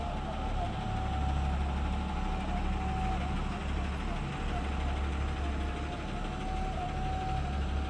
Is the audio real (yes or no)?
yes